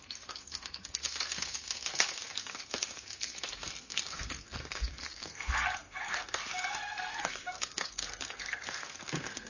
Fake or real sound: fake